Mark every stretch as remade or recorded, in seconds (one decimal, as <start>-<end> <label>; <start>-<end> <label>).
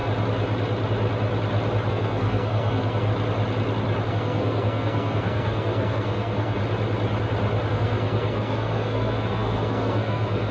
0.0-1.9 recorded; 1.9-3.1 remade; 3.1-4.1 recorded; 4.1-6.6 remade; 6.6-7.7 recorded; 7.7-10.5 remade